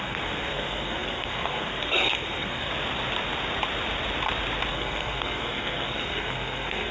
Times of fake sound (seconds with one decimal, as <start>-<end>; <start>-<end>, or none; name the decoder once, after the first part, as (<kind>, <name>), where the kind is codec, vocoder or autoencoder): 0.0-2.7 (codec, SNAC); 4.7-6.9